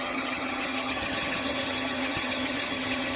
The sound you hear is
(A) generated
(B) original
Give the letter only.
A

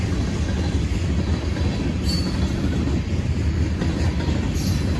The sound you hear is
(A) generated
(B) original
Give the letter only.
B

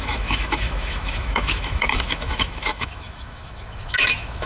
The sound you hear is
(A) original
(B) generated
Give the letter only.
B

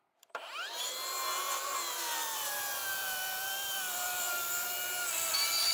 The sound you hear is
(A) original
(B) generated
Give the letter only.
B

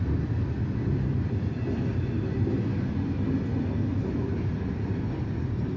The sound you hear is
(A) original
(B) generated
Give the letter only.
A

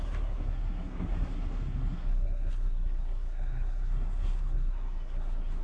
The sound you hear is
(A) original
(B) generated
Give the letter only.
B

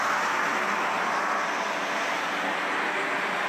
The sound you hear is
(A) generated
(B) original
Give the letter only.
B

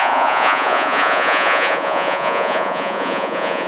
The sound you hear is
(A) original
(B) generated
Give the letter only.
B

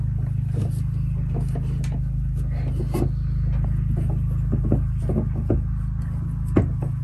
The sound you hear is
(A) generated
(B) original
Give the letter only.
B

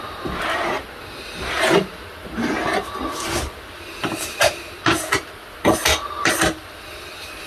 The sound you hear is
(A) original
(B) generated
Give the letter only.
A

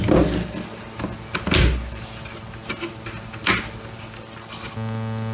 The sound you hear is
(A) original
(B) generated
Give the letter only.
A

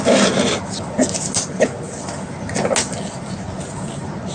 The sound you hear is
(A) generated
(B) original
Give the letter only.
B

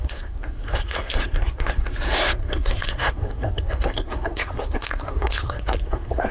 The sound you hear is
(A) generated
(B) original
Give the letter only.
A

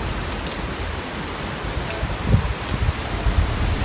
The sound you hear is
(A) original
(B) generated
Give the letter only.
A